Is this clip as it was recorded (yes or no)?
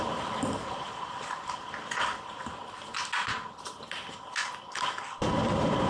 yes